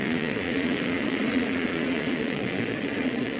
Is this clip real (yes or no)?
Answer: no